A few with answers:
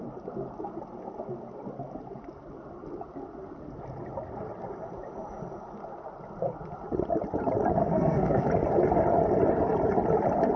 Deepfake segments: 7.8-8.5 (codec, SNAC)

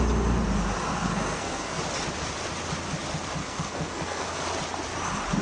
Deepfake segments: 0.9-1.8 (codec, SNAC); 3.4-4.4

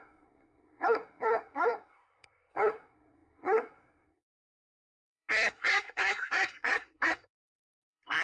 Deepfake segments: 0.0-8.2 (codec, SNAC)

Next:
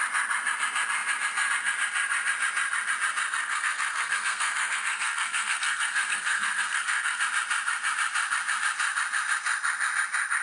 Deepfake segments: 3.4-7.2 (codec, SNAC)